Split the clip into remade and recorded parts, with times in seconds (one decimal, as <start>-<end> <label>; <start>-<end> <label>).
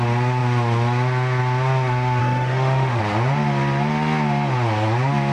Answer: 0.0-2.2 recorded; 2.2-3.0 remade; 3.0-5.3 recorded